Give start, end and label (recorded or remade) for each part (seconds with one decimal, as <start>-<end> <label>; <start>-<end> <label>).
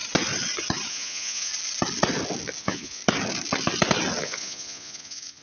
0.0-0.9 recorded; 0.9-1.5 remade; 1.5-2.6 recorded; 2.6-3.0 remade; 3.0-4.2 recorded; 4.2-5.4 remade